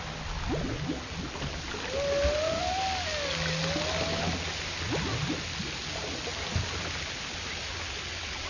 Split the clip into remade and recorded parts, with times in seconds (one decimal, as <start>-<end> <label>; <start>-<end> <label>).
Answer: 0.0-8.5 recorded